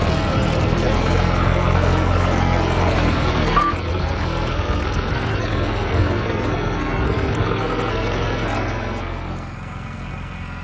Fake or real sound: fake